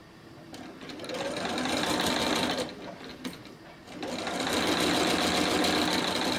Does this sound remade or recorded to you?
recorded